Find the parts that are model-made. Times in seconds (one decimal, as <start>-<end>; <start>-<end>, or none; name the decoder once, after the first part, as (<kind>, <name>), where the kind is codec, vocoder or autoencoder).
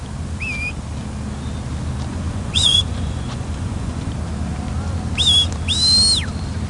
2.1-4.1 (vocoder, Vocos)